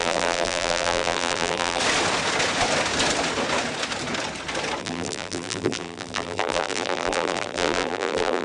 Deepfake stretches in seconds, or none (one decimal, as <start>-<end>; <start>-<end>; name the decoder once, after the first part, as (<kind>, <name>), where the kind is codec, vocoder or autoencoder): 0.0-1.8 (vocoder, BigVGAN v2); 4.8-8.4